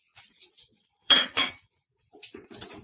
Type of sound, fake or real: fake